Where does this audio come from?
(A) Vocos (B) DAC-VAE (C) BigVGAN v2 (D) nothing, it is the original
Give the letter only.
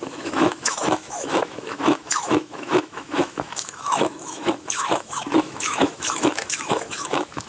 B